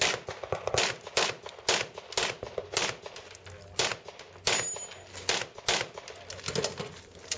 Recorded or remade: recorded